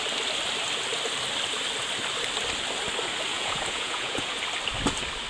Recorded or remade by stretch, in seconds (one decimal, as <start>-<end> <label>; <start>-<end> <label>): 0.0-3.3 recorded; 3.3-4.4 remade; 4.4-5.3 recorded